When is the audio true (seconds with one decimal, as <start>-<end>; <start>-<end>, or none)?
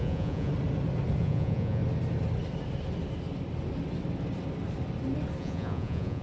0.5-1.2; 1.8-5.4